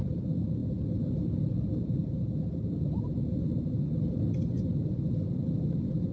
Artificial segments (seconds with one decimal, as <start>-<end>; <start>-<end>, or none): none